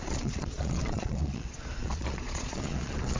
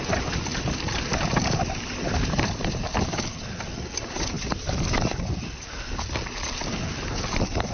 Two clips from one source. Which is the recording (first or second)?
second